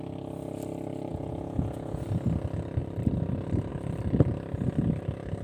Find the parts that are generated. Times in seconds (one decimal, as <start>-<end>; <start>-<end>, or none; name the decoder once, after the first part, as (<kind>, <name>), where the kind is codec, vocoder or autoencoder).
1.1-2.0 (vocoder, Vocos)